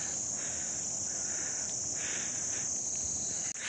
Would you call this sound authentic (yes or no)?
yes